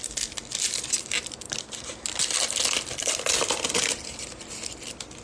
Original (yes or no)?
yes